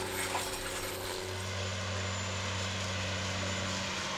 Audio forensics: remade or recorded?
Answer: recorded